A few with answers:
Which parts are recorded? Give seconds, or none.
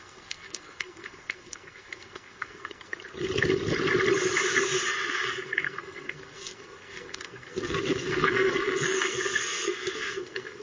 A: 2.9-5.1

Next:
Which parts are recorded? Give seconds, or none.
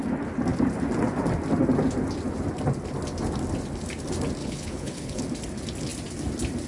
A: 0.0-4.4; 5.2-6.7